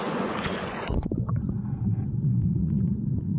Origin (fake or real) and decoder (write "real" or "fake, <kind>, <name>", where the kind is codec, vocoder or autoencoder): fake, vocoder, Vocos